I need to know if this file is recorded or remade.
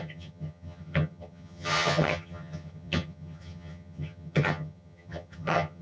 remade